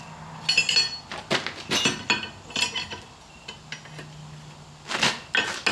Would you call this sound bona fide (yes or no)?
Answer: yes